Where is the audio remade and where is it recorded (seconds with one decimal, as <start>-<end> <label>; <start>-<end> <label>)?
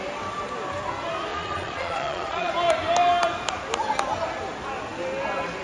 0.0-1.3 recorded; 1.3-2.5 remade; 2.5-5.6 recorded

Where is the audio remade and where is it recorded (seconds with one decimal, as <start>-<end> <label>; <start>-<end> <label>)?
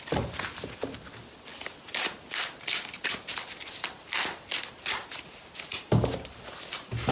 0.0-7.1 recorded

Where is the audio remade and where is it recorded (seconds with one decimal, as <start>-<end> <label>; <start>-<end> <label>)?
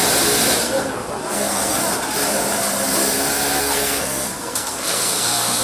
0.0-0.6 recorded; 0.6-1.8 remade; 1.8-3.6 recorded; 3.6-5.6 remade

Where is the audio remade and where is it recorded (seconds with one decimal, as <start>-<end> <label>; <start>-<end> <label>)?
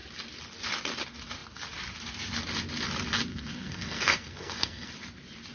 0.0-3.3 recorded; 3.3-4.9 remade; 4.9-5.5 recorded